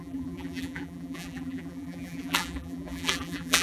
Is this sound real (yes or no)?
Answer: no